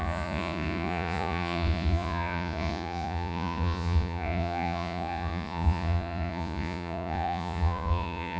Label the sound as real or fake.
fake